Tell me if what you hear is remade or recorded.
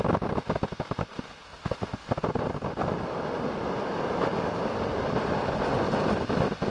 recorded